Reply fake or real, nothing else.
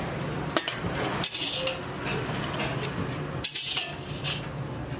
real